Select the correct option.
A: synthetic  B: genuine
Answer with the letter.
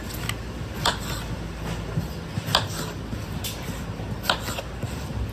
B